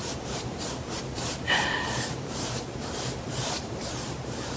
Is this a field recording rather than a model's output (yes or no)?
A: no